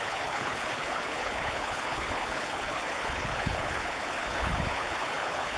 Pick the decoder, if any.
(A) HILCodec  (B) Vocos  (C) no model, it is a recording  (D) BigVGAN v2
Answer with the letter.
A